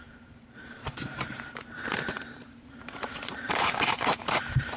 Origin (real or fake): fake